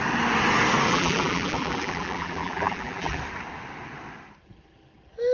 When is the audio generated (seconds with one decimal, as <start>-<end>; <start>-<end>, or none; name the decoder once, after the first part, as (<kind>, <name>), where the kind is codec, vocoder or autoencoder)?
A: 0.9-3.2 (vocoder, BigVGAN v2)